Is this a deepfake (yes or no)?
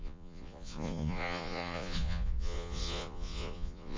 yes